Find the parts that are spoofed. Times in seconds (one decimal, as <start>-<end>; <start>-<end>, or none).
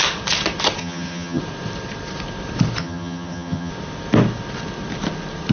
0.8-1.4; 2.8-3.7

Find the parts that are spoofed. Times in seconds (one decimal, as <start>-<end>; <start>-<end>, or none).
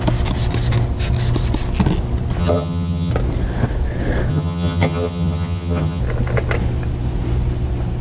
2.4-3.1; 4.3-6.0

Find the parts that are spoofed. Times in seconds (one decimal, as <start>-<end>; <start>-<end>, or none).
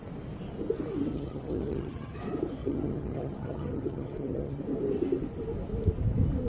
1.1-2.2; 2.6-4.6